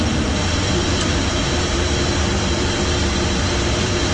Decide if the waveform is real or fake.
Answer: real